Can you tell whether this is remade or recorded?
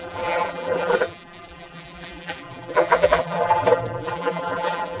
remade